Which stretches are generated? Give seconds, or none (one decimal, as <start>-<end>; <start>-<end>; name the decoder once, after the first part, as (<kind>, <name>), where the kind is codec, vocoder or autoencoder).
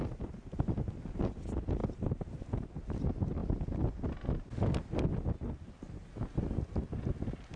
1.8-2.3 (vocoder, BigVGAN v2)